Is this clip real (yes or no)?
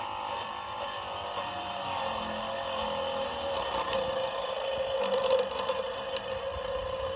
yes